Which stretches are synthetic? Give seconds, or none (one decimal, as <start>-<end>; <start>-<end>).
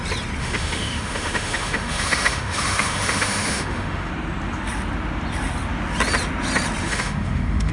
0.4-4.1; 6.8-7.7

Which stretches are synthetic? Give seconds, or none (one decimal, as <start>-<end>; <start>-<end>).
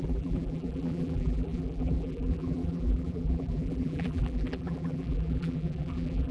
0.0-6.3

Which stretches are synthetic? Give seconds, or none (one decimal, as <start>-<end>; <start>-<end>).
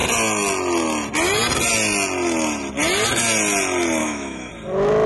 4.0-4.5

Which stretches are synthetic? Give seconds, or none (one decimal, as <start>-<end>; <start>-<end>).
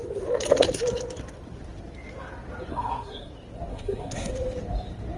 2.7-3.3; 3.7-4.3